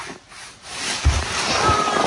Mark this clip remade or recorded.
recorded